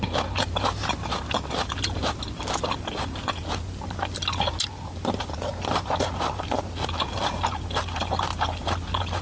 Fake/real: real